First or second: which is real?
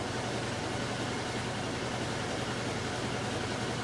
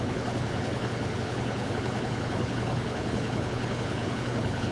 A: first